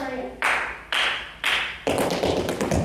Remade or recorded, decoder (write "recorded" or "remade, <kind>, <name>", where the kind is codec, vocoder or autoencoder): recorded